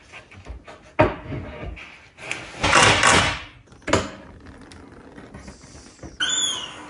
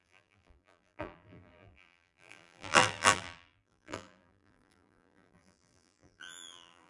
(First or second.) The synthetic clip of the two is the second